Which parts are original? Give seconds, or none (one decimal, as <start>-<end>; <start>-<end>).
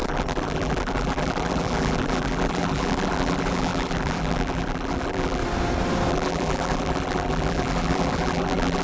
5.4-6.1